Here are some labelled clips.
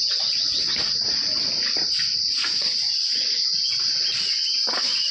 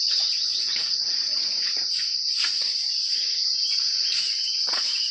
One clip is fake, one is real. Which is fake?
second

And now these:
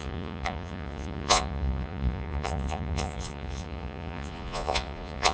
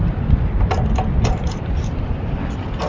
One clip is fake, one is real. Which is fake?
first